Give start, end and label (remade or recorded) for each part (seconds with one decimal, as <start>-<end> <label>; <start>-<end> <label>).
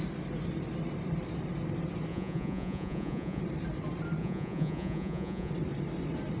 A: 0.0-2.1 recorded; 2.1-3.4 remade; 3.4-4.2 recorded; 4.2-5.5 remade; 5.5-6.4 recorded